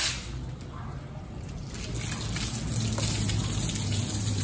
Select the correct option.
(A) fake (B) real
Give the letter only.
B